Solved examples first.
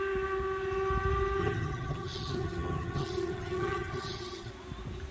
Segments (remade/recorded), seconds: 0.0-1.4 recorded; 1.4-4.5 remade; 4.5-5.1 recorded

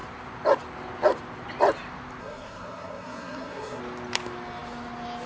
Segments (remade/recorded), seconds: 0.0-2.2 recorded; 2.2-3.8 remade; 3.8-5.3 recorded

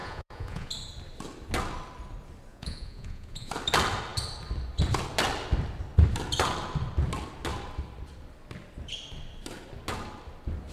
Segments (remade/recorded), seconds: 0.0-0.7 remade; 0.7-2.5 recorded; 2.5-3.5 remade; 3.5-10.7 recorded

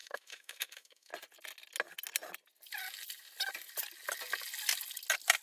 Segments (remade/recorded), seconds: 0.0-1.1 remade; 1.1-5.4 recorded

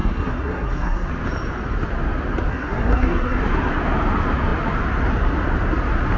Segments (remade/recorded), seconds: 0.0-1.1 remade; 1.1-2.5 recorded; 2.5-3.4 remade; 3.4-6.2 recorded